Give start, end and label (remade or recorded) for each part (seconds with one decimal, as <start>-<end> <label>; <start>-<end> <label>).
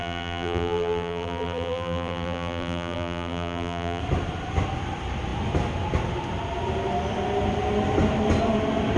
0.0-4.0 remade; 4.0-9.0 recorded